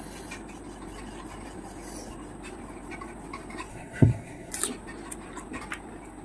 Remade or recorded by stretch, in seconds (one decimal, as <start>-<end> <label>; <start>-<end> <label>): 0.0-3.7 recorded; 3.7-4.5 remade; 4.5-6.2 recorded